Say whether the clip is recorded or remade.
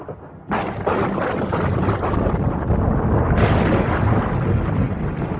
recorded